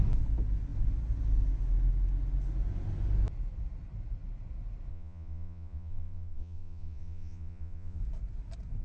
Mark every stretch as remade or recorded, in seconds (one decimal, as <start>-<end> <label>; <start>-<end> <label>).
0.0-4.9 recorded; 4.9-8.0 remade; 8.0-8.8 recorded